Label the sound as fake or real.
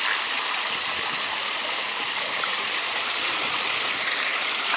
fake